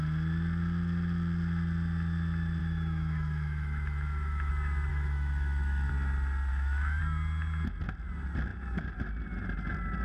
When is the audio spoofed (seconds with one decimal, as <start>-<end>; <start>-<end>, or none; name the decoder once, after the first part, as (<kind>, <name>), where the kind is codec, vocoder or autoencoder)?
2.6-4.5 (autoencoder, DAC-VAE); 4.9-5.9; 6.5-7.0